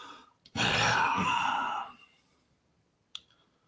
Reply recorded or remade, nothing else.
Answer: recorded